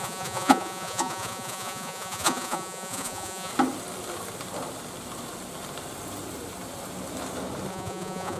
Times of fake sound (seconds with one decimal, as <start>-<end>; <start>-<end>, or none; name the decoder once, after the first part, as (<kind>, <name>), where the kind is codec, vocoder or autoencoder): 0.0-3.5 (vocoder, Vocos); 7.7-8.4